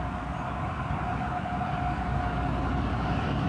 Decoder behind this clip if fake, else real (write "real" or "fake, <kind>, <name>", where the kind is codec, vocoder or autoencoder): fake, codec, DAC